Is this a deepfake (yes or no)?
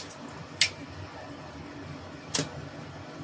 no